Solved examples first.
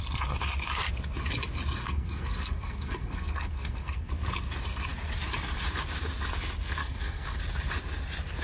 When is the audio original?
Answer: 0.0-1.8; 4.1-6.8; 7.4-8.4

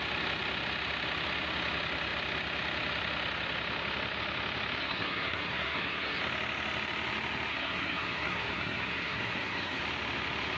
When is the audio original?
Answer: 0.0-4.8; 6.2-7.5; 9.8-10.6